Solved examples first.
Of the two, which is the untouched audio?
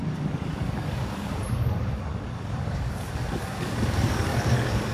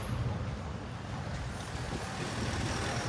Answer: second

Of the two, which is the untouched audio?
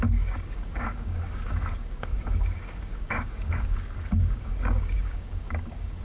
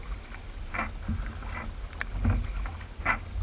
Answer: second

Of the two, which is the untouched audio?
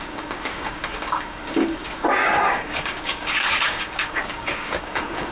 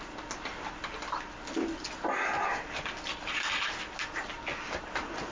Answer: second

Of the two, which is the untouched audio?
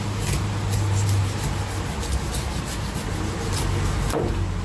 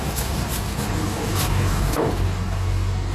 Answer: first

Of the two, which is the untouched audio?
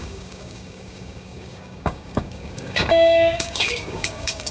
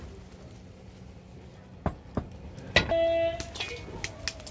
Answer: second